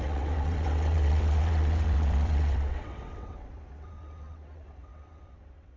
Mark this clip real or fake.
fake